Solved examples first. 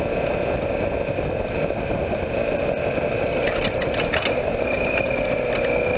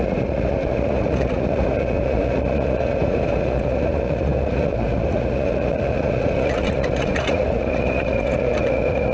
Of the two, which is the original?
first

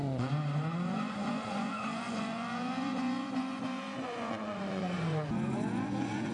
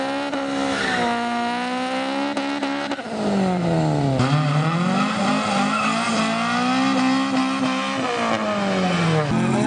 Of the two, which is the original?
second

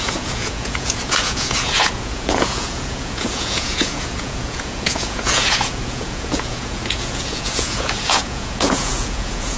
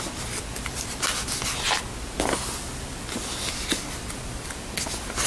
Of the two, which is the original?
second